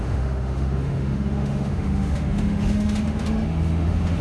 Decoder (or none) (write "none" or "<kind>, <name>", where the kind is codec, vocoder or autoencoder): autoencoder, DAC-VAE